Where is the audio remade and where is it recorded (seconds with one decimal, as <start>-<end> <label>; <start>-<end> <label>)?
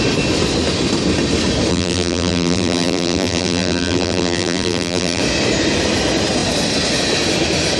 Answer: 0.0-1.7 recorded; 1.7-5.2 remade; 5.2-7.8 recorded